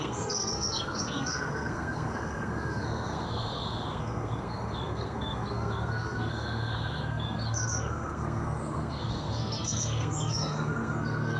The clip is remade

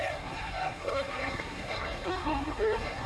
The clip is remade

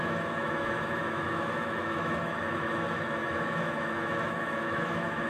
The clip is remade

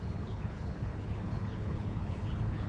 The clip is remade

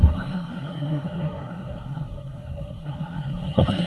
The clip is remade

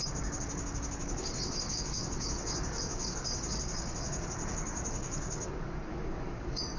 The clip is remade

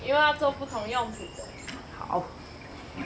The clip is recorded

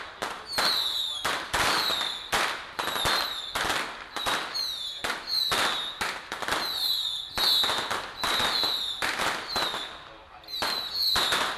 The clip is recorded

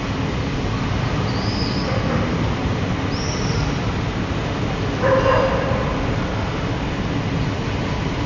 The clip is recorded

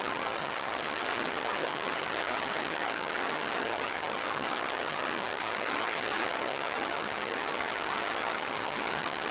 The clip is remade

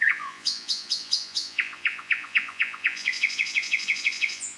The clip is remade